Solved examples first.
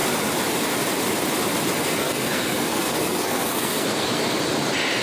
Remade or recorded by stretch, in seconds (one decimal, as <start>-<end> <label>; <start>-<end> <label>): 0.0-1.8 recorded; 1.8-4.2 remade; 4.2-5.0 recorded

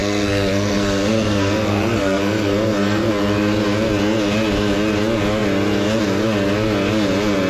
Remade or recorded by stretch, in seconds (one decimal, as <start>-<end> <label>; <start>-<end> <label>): 0.0-3.1 remade; 3.1-7.5 recorded

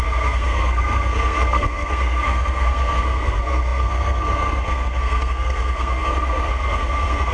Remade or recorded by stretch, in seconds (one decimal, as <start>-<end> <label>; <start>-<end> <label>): 0.0-7.3 remade